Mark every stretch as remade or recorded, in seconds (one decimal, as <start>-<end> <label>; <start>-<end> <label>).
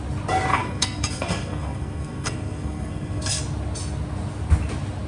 0.0-0.5 recorded; 0.5-3.4 remade; 3.4-5.1 recorded